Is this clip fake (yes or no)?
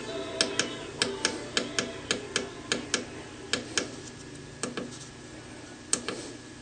no